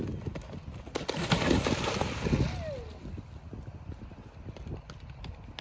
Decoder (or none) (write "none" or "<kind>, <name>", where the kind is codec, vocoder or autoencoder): none